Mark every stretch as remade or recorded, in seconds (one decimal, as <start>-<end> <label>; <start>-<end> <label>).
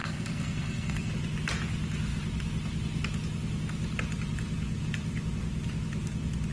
0.0-1.1 remade; 1.1-6.5 recorded